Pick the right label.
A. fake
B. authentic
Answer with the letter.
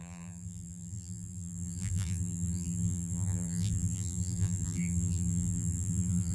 A